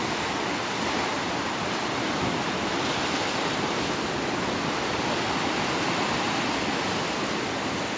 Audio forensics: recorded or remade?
recorded